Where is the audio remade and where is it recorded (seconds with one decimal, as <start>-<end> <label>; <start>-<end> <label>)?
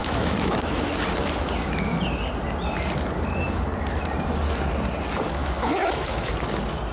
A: 0.0-0.8 remade; 0.8-5.4 recorded; 5.4-6.3 remade; 6.3-6.9 recorded